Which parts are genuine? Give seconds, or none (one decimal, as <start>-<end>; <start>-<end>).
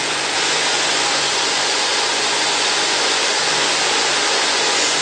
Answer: none